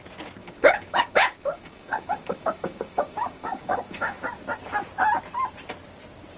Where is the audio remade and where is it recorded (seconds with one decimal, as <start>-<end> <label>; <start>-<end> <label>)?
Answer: 0.0-0.4 recorded; 0.4-4.2 remade; 4.2-6.4 recorded